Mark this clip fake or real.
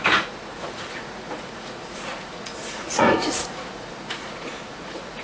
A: fake